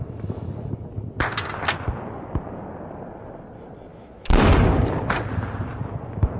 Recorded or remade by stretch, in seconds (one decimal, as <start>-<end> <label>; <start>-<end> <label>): 0.0-3.9 recorded; 3.9-4.5 remade; 4.5-6.4 recorded